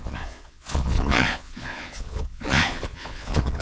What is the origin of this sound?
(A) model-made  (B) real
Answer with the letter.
A